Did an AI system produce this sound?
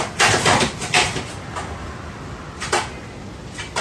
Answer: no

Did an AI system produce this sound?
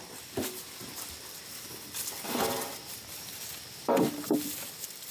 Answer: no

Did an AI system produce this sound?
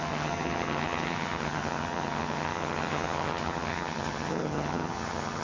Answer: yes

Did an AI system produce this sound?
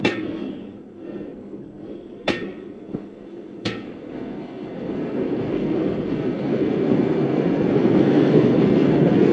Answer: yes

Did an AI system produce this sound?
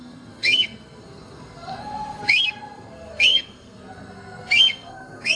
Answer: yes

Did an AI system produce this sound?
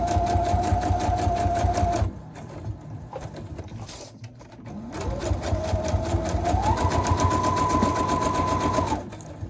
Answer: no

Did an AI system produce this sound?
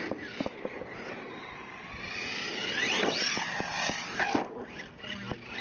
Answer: no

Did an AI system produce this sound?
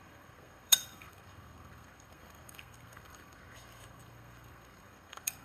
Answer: yes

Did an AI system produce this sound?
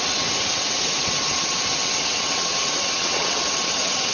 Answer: yes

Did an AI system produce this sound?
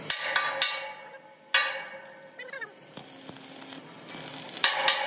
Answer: no